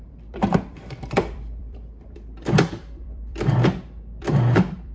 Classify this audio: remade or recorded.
remade